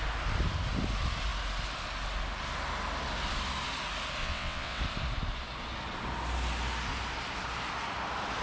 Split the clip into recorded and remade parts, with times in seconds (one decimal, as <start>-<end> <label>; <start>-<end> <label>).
0.0-4.2 recorded; 4.2-4.8 remade; 4.8-8.4 recorded